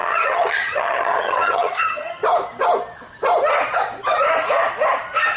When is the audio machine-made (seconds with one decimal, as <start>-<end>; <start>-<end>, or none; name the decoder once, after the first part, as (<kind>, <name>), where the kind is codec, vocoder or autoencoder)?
0.0-2.2 (vocoder, HiFi-GAN)